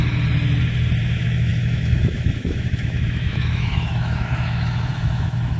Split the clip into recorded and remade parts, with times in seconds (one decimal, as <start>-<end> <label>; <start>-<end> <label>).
0.0-1.0 recorded; 1.0-5.6 remade